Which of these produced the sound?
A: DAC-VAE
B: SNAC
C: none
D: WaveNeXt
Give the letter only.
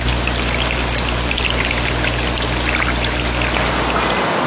C